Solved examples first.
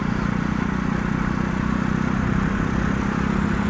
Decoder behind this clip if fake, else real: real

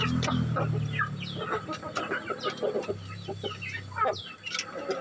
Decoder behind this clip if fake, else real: real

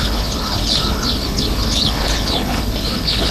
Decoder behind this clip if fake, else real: fake, codec, HILCodec